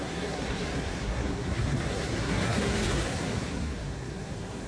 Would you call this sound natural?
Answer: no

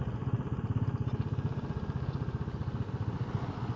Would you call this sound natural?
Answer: yes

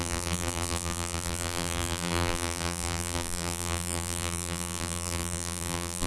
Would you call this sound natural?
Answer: no